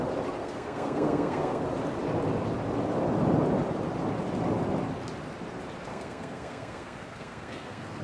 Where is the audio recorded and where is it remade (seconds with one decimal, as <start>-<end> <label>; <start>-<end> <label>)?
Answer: 0.0-0.4 recorded; 0.4-1.6 remade; 1.6-5.9 recorded; 5.9-8.0 remade